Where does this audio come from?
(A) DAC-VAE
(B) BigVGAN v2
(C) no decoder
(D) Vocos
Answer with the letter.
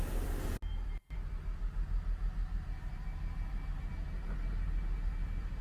C